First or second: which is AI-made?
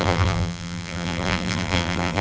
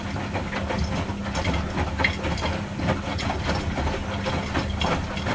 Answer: first